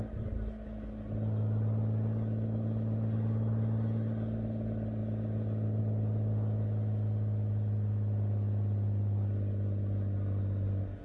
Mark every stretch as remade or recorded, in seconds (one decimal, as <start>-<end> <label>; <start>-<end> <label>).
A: 0.0-11.0 recorded